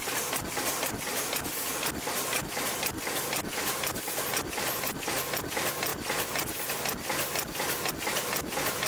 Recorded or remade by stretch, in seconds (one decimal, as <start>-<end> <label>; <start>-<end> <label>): 0.0-8.9 recorded